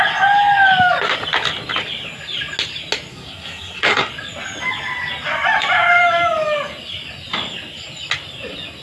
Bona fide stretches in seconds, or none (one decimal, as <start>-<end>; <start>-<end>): 0.0-3.1; 4.1-8.8